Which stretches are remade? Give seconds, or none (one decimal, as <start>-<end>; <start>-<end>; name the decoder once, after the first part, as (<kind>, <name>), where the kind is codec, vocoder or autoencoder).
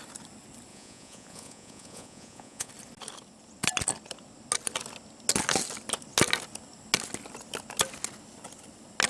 0.7-2.7 (vocoder, Vocos)